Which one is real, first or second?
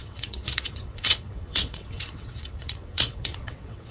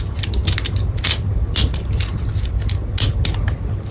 second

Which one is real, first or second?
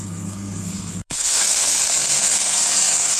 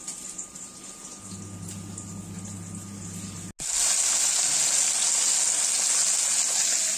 second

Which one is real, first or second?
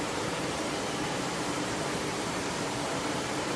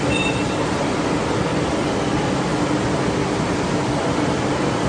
second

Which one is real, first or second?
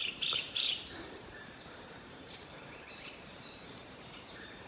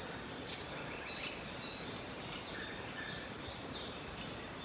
second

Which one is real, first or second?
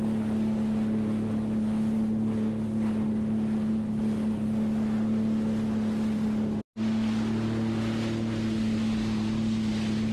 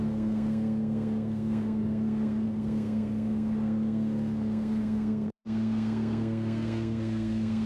first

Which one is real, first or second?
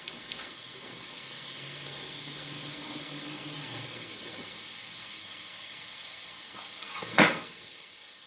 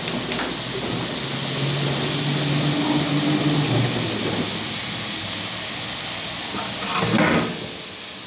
second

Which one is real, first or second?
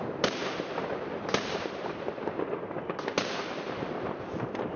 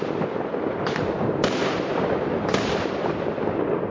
second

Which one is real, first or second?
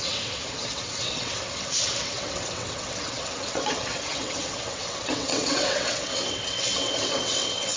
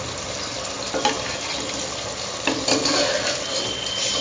second